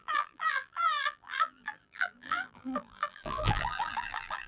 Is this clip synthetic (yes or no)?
yes